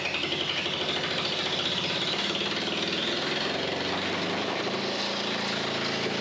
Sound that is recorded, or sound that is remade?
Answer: recorded